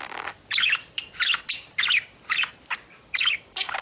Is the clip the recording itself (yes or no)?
yes